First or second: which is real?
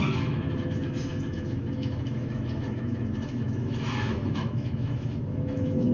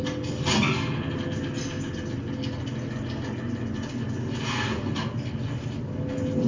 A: second